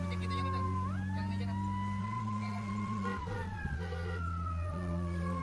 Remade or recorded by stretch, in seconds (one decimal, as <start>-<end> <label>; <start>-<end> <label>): 0.0-2.0 recorded; 2.0-5.4 remade